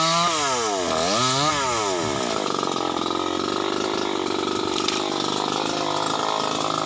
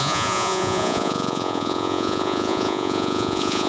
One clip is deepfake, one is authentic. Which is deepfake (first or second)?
second